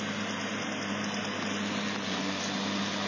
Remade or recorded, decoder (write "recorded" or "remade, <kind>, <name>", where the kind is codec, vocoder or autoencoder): recorded